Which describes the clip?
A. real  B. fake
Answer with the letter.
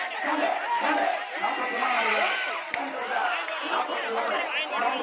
A